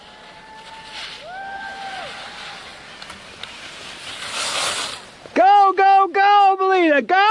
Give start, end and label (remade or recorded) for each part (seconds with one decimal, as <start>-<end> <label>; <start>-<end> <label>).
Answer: 0.0-7.3 recorded